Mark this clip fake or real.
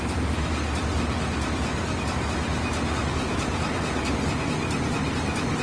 real